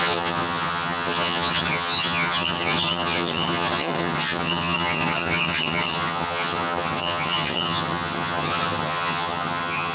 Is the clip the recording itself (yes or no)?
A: no